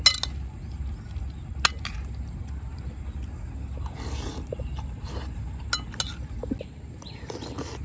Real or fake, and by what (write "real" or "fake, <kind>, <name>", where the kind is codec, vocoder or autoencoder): real